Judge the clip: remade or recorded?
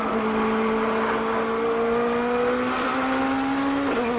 recorded